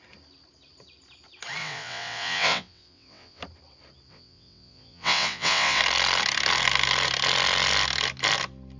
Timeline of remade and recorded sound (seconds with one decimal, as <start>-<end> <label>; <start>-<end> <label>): 0.0-1.6 recorded; 1.6-3.4 remade; 3.4-4.1 recorded; 4.1-5.8 remade; 5.8-8.8 recorded